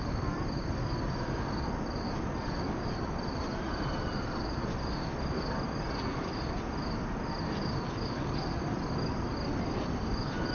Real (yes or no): yes